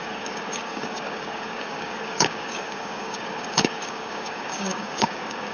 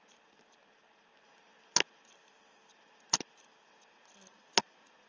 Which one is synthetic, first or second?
first